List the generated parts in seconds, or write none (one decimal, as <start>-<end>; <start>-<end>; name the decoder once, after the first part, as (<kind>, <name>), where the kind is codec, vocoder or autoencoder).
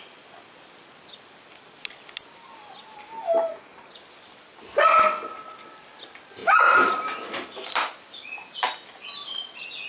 6.4-7.2 (vocoder, BigVGAN v2)